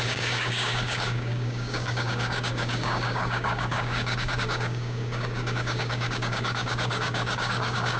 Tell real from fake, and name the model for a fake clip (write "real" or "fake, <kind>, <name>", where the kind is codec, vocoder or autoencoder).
fake, codec, DAC